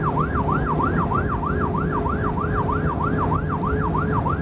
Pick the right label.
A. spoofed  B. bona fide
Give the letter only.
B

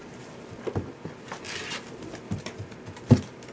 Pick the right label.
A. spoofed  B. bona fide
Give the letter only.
B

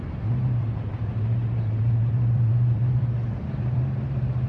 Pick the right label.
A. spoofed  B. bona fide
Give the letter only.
A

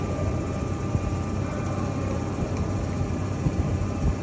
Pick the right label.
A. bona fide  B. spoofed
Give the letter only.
B